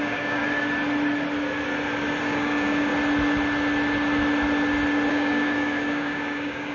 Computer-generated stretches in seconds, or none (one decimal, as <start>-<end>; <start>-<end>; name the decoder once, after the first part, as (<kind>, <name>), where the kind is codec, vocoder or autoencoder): 0.0-0.4 (codec, DAC); 2.2-2.9; 5.1-6.7

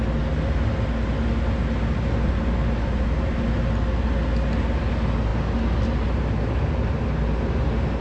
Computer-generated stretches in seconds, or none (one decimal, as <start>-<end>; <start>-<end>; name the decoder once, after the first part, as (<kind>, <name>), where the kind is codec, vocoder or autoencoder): none

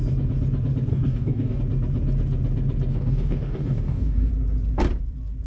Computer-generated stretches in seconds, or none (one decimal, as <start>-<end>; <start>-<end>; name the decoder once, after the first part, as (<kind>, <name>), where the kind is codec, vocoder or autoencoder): 0.9-1.6 (codec, DAC); 2.9-4.3

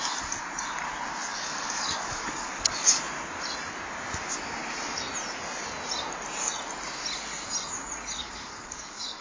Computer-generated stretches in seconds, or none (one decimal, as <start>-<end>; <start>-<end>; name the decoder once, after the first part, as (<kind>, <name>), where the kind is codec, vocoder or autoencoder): 1.3-3.0 (codec, DAC); 8.2-9.2

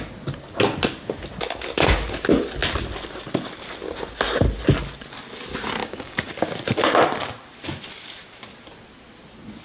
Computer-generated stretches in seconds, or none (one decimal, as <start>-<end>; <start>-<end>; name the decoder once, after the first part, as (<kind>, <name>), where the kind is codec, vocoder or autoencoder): 5.8-6.3 (codec, DAC)

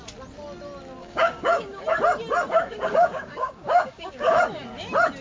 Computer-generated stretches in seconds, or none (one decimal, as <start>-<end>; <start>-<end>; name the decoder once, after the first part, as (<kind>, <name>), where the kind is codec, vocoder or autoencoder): 1.0-1.8 (codec, DAC); 2.5-4.4